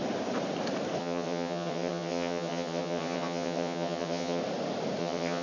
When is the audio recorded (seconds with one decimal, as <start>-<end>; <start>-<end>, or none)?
0.0-1.0; 4.4-5.0